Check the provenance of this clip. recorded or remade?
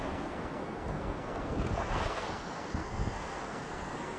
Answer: remade